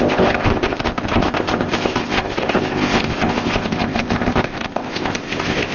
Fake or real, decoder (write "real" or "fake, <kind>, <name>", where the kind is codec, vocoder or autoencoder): fake, codec, ZipCodec